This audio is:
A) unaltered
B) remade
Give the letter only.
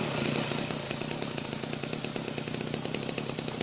A